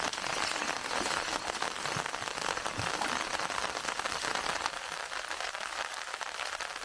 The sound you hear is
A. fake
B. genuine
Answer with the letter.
B